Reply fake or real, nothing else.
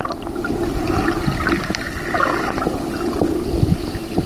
real